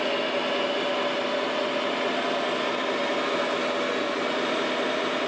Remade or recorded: recorded